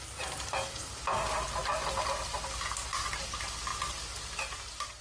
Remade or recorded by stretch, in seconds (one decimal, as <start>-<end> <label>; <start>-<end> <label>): 0.0-5.0 recorded